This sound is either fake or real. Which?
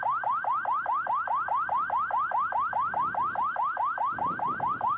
real